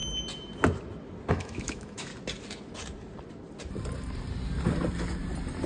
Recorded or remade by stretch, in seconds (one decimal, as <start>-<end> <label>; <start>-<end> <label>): 0.0-1.3 recorded; 1.3-2.1 remade; 2.1-5.7 recorded